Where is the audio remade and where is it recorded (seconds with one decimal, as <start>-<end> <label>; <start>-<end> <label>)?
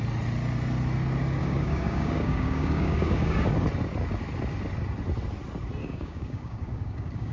0.0-1.4 recorded; 1.4-3.5 remade; 3.5-5.8 recorded; 5.8-7.3 remade